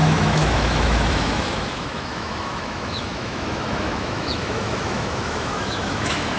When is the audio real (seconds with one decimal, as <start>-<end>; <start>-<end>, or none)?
none